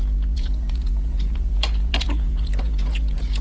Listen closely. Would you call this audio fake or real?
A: fake